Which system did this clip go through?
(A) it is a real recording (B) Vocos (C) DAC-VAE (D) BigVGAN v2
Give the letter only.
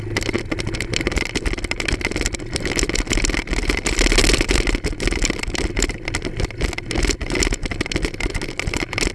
A